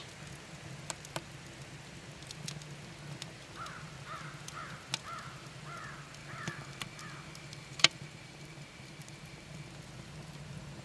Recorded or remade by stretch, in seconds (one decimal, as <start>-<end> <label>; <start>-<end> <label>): 0.0-6.2 recorded; 6.2-9.7 remade; 9.7-10.8 recorded